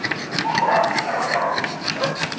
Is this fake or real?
real